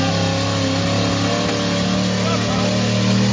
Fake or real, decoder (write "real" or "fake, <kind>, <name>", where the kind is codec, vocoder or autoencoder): real